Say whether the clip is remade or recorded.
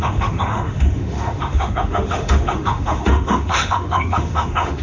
remade